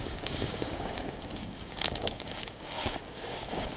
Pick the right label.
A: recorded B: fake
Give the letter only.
B